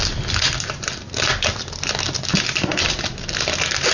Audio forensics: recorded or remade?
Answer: recorded